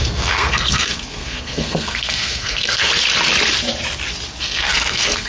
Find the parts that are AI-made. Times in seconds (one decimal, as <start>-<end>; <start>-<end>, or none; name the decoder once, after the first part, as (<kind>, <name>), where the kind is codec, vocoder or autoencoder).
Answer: 0.0-2.9 (codec, SNAC); 4.4-5.3